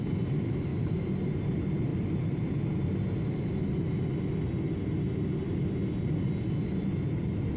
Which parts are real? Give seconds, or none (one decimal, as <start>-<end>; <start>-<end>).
0.0-7.6